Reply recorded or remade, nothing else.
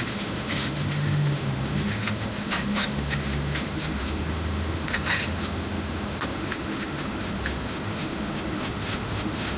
remade